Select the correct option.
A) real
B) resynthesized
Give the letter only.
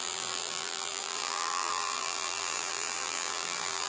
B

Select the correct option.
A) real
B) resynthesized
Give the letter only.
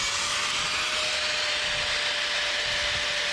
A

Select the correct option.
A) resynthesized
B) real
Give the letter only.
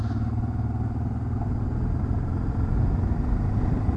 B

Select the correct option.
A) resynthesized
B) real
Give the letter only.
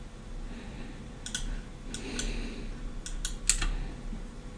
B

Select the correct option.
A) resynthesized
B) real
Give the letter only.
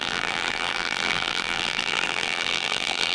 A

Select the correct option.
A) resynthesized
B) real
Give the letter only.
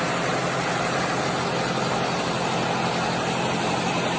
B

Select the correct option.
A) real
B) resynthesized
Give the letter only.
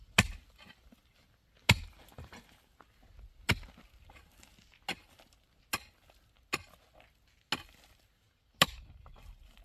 A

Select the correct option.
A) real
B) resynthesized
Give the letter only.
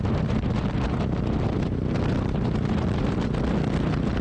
A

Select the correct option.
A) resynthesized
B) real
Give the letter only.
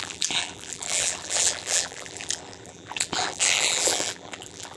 A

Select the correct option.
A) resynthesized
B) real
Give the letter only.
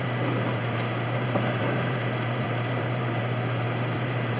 A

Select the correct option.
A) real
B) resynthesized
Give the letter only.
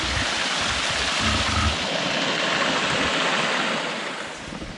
A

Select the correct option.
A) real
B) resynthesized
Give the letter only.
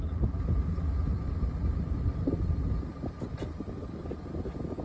A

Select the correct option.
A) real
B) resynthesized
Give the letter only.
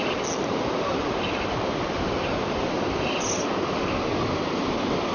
A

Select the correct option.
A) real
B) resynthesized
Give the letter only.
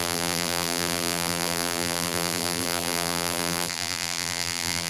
B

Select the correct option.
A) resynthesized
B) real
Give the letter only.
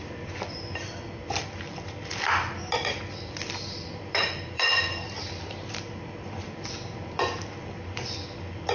A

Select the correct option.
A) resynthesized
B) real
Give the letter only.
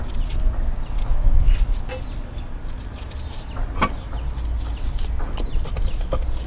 B